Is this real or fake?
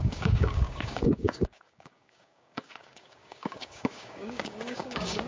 fake